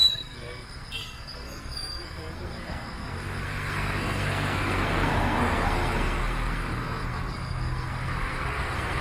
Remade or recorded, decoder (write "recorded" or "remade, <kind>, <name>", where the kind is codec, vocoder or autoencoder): remade, codec, SNAC